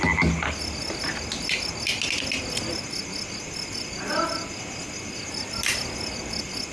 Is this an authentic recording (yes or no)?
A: yes